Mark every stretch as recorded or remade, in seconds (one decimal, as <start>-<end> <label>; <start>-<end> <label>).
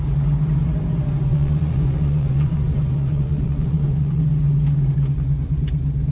0.0-1.3 recorded; 1.3-4.2 remade; 4.2-6.1 recorded